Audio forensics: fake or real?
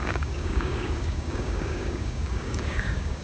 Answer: fake